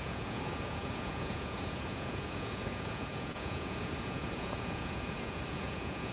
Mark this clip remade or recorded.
remade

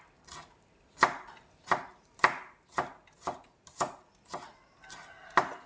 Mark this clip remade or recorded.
recorded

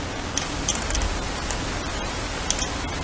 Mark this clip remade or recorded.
recorded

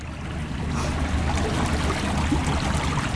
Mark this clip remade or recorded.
recorded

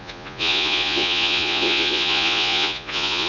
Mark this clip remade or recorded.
remade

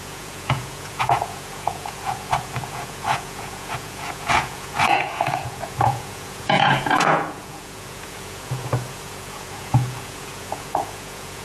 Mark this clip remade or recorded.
remade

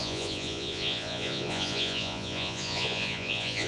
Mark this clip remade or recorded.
remade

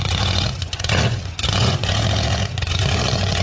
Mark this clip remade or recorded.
remade